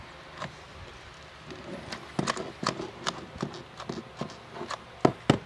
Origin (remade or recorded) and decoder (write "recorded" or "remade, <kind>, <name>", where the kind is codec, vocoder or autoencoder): recorded